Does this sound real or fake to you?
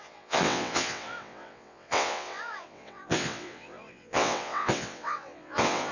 fake